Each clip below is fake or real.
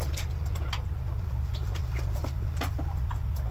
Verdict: real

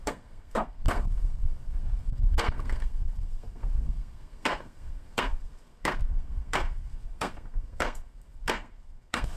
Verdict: fake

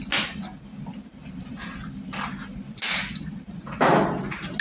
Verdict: real